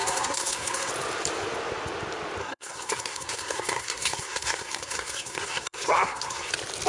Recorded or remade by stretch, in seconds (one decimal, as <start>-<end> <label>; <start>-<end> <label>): 0.0-0.9 remade; 0.9-2.4 recorded; 2.4-6.5 remade; 6.5-6.9 recorded